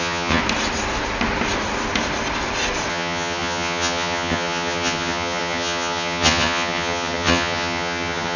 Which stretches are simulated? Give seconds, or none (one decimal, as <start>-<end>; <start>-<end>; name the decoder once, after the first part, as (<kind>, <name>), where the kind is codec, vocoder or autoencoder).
0.0-0.4 (vocoder, HiFi-GAN); 2.9-8.4